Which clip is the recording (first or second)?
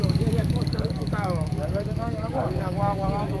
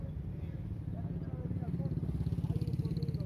second